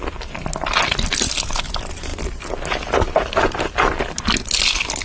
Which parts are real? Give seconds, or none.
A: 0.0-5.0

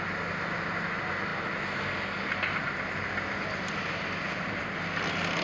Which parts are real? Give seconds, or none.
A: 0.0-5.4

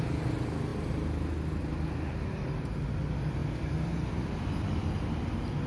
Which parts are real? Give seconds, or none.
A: 0.0-5.7

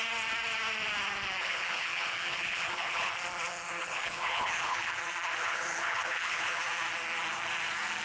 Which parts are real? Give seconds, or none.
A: 0.0-1.4; 3.1-3.8; 5.0-5.4; 6.6-8.0

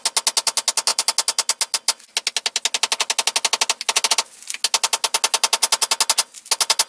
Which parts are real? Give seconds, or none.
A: 0.0-6.9

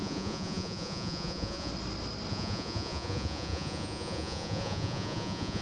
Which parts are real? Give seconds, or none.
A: 1.7-2.3